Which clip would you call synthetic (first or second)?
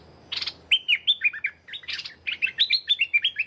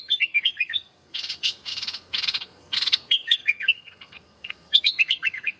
second